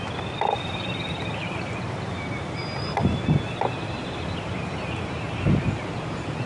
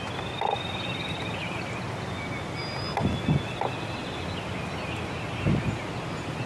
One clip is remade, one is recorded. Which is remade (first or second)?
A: first